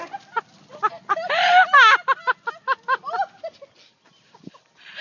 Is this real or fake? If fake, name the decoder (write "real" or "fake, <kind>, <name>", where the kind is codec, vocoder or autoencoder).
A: real